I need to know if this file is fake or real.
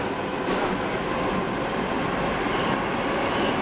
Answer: real